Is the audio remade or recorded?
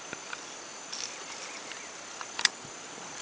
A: recorded